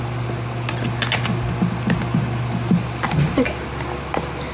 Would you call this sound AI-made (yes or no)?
no